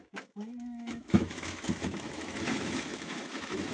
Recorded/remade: remade